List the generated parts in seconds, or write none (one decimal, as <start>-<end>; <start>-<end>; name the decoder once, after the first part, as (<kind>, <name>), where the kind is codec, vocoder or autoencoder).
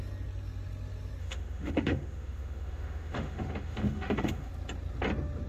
1.2-4.5 (autoencoder, DAC-VAE)